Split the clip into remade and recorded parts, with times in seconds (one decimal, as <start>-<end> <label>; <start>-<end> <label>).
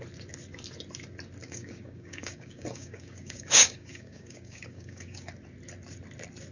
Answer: 0.0-1.4 recorded; 1.4-5.3 remade; 5.3-6.5 recorded